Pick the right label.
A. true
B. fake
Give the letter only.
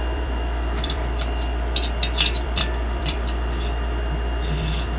B